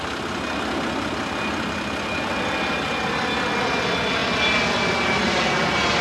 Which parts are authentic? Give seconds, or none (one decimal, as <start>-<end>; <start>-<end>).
0.0-6.0